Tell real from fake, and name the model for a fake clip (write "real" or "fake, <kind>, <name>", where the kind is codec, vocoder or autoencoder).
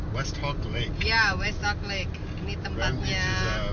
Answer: real